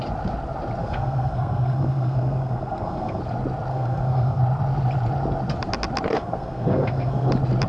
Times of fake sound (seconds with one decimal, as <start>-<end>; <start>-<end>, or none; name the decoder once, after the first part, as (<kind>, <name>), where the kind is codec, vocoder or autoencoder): 0.8-3.2 (codec, SNAC); 3.7-4.4; 6.1-7.3